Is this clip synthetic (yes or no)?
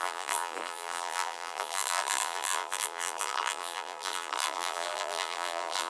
yes